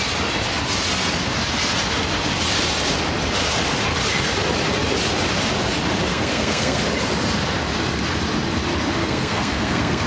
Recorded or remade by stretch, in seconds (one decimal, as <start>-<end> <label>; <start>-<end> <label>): 0.0-6.1 recorded; 6.1-6.8 remade; 6.8-9.0 recorded; 9.0-10.1 remade